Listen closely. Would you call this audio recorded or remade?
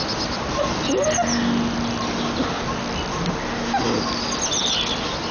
recorded